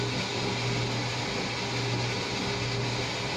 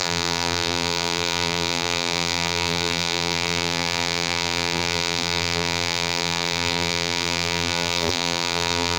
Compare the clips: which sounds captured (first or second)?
first